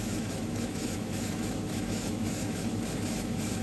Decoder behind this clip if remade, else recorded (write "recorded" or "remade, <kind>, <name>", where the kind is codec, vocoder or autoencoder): remade, autoencoder, DAC-VAE